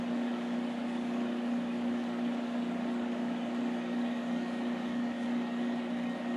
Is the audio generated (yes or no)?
yes